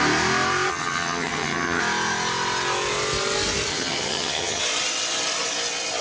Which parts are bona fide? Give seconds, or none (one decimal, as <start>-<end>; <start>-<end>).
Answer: 0.0-0.7; 1.8-3.7; 4.6-6.0